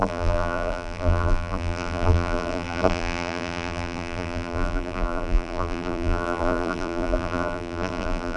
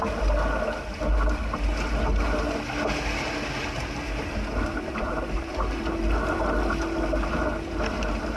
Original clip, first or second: second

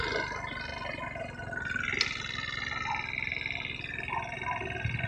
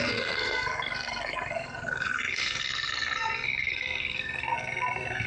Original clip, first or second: first